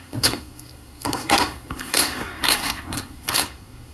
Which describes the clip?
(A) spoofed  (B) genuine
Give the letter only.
A